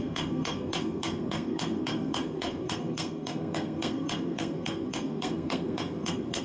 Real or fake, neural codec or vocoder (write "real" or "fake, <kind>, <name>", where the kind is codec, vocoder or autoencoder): fake, codec, SNAC